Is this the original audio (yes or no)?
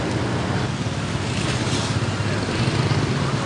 yes